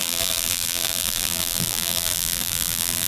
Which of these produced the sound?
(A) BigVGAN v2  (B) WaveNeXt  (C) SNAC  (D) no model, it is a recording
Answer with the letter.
A